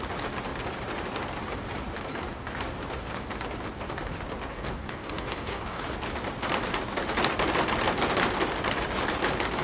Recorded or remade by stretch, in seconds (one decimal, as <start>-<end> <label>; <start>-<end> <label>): 0.0-4.5 recorded; 4.5-5.8 remade; 5.8-9.6 recorded